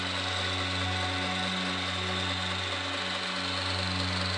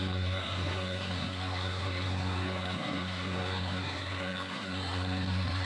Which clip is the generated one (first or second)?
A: second